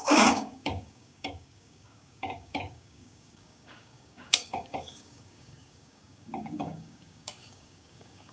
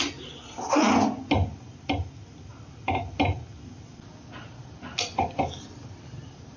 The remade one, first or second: first